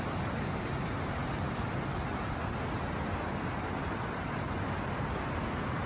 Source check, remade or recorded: recorded